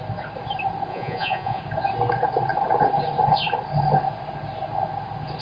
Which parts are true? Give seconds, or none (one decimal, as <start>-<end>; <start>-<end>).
0.0-0.9; 1.6-5.4